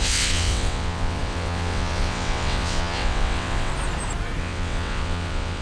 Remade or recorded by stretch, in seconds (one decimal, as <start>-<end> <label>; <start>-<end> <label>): 0.0-3.7 remade; 3.7-4.4 recorded; 4.4-5.6 remade